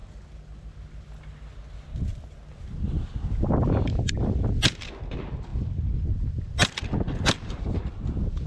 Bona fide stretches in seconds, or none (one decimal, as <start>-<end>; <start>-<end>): 0.7-5.5; 7.8-8.5